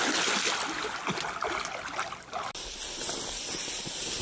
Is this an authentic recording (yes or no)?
yes